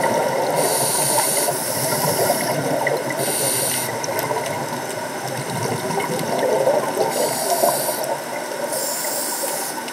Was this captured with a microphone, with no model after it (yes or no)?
yes